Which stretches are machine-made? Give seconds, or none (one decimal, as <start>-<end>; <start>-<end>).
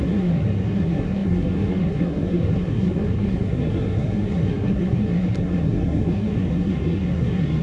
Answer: 0.0-7.6